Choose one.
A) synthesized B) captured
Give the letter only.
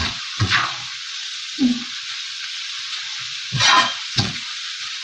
A